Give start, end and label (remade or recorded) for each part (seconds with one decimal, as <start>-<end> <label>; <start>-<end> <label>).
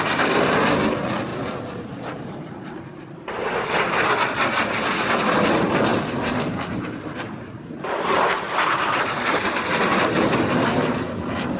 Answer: 0.0-1.3 recorded; 1.3-3.3 remade; 3.3-5.9 recorded; 5.9-11.0 remade; 11.0-11.6 recorded